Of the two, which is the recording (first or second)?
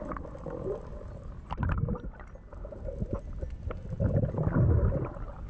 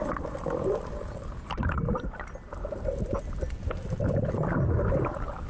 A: first